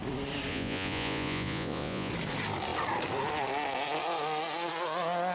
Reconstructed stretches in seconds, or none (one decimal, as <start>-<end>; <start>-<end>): 0.5-2.1

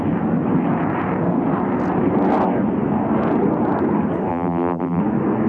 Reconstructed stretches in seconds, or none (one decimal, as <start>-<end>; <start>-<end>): 4.3-5.0

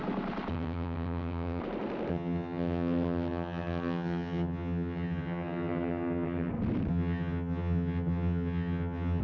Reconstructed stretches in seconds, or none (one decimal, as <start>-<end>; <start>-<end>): 0.5-1.6; 2.1-6.5; 6.9-9.2

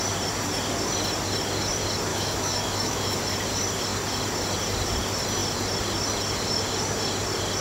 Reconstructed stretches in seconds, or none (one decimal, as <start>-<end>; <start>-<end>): 2.1-3.2

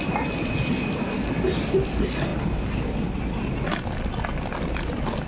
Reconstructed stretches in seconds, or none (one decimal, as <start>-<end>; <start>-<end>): none

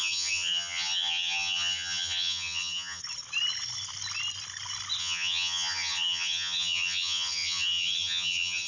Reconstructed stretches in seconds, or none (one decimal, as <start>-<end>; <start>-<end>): 0.0-3.0; 5.0-8.7

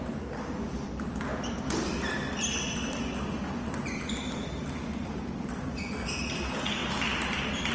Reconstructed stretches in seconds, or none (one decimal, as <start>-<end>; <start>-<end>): none